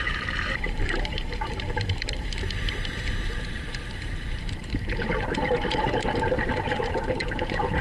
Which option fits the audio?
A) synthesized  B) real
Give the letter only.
A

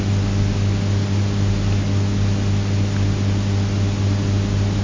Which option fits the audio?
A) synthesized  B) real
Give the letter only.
B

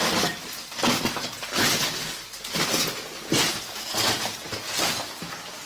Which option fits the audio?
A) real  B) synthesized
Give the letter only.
A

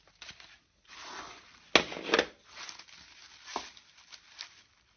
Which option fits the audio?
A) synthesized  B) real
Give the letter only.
B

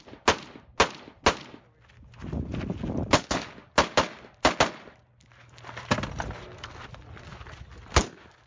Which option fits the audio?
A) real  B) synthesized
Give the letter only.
A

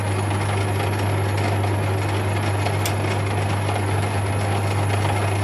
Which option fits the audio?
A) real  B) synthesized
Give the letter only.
A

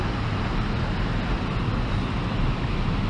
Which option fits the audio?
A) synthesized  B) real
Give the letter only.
B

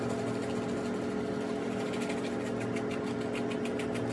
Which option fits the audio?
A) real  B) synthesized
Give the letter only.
A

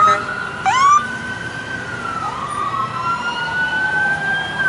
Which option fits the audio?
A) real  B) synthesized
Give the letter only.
B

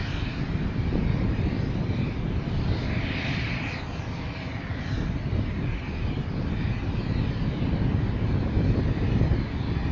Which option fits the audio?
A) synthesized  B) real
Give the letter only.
B